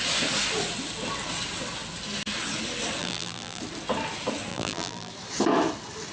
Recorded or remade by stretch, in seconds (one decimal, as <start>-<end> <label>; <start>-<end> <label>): 0.0-3.0 recorded; 3.0-3.6 remade; 3.6-4.5 recorded; 4.5-5.1 remade; 5.1-6.1 recorded